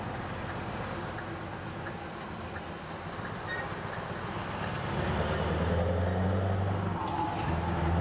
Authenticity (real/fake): real